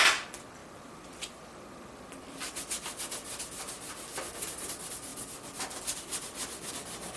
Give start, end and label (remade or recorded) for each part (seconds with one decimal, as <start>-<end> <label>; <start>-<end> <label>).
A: 0.0-7.2 recorded